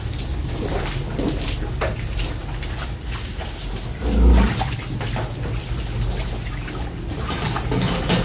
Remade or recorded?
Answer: recorded